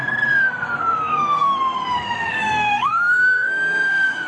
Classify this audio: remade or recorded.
remade